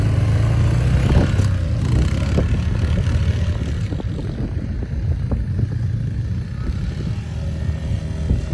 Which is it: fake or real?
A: real